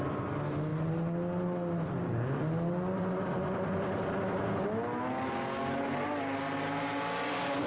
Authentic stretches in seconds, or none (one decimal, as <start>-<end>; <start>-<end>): 0.0-7.7